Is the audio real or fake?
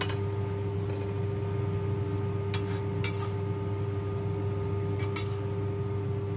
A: real